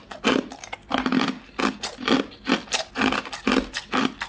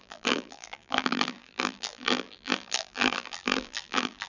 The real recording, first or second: first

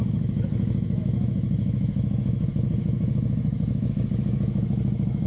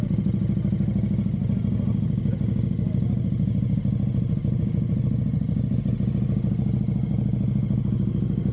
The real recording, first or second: second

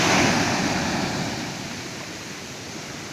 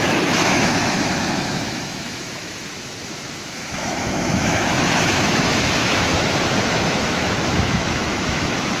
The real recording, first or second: first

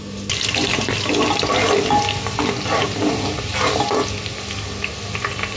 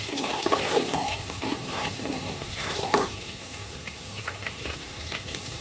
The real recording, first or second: first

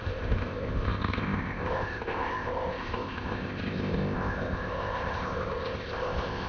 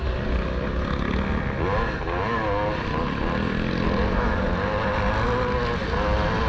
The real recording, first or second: second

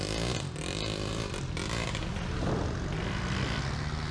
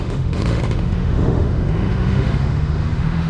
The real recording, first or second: first